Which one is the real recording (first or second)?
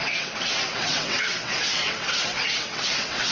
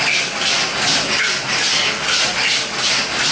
second